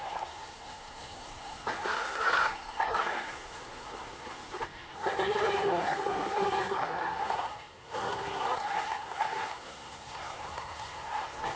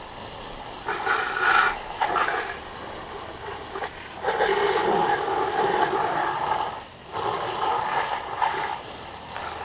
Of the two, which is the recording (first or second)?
second